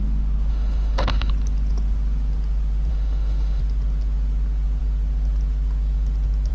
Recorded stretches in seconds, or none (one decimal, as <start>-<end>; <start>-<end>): 0.0-0.5; 1.3-2.9; 3.6-6.5